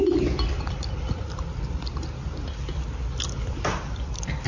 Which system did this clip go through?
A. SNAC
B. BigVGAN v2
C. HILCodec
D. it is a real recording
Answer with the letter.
D